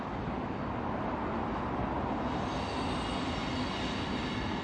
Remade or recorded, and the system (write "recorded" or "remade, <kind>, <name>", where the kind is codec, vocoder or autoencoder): recorded